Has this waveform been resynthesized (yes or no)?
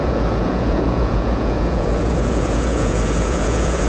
yes